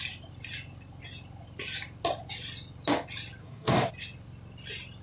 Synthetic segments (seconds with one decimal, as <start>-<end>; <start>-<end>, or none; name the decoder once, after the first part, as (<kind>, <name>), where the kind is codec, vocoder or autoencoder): 3.4-3.9 (codec, DAC)